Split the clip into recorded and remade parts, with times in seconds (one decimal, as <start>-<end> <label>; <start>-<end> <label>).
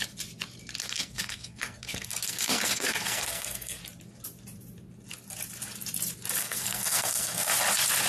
0.0-0.8 recorded; 0.8-3.8 remade; 3.8-6.4 recorded; 6.4-7.5 remade; 7.5-8.1 recorded